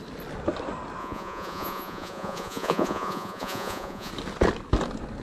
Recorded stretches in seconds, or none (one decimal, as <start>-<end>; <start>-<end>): 0.0-1.0; 4.1-5.2